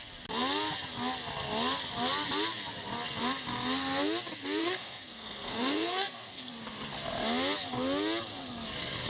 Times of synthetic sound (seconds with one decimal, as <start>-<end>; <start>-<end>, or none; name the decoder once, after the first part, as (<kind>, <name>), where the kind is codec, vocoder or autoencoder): 4.6-6.5 (codec, SNAC)